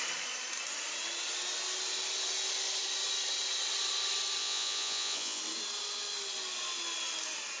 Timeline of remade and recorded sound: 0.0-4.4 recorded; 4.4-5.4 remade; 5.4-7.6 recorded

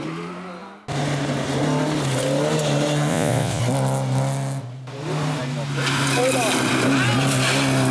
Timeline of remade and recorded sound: 0.0-3.1 recorded; 3.1-3.6 remade; 3.6-7.9 recorded

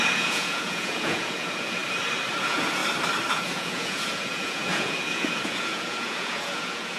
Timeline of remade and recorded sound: 0.0-1.8 remade; 1.8-2.4 recorded; 2.4-2.8 remade; 2.8-3.3 recorded; 3.3-7.0 remade

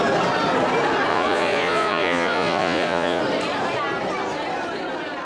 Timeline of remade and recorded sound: 0.0-1.1 recorded; 1.1-3.2 remade; 3.2-5.2 recorded

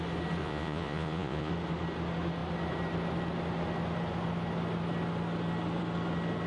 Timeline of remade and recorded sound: 0.0-0.4 recorded; 0.4-1.5 remade; 1.5-6.5 recorded

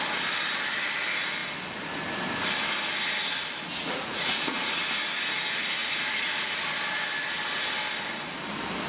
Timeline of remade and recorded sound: 0.0-3.7 recorded; 3.7-4.7 remade; 4.7-5.8 recorded; 5.8-6.6 remade; 6.6-8.9 recorded

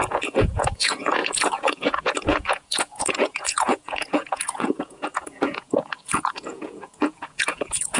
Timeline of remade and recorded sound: 0.0-8.0 remade